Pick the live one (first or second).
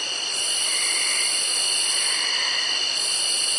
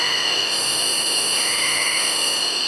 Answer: first